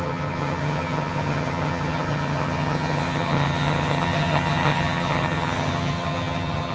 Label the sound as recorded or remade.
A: remade